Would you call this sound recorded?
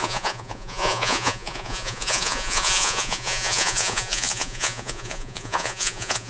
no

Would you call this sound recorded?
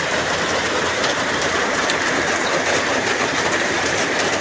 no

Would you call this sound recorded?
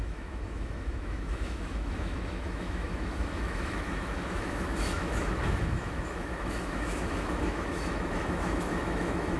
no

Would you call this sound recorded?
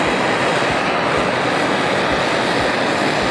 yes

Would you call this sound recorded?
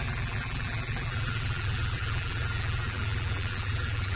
no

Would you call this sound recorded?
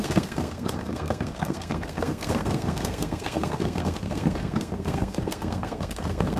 no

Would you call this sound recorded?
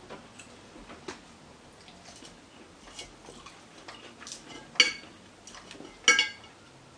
yes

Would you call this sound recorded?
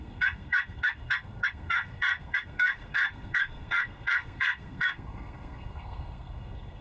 no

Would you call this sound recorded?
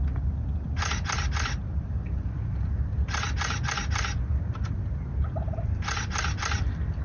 yes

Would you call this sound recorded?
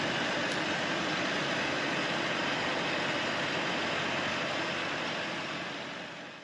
yes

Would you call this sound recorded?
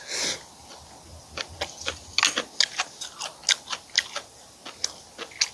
yes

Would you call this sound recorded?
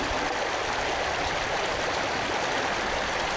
yes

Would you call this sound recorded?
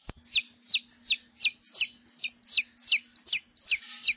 yes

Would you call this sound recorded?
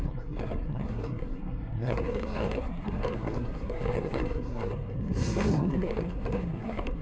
no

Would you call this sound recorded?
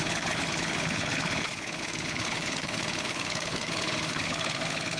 no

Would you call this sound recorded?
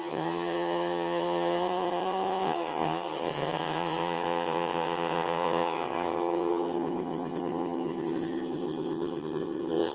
no